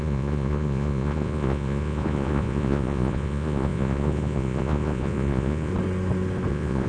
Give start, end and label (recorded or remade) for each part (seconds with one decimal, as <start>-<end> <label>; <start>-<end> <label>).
0.0-5.7 remade; 5.7-6.5 recorded; 6.5-6.9 remade